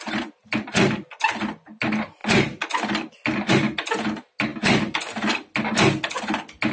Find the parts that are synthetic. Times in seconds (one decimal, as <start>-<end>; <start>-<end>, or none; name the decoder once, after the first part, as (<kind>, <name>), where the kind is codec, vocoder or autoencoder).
none